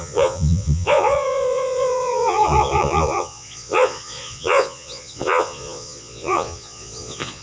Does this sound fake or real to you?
fake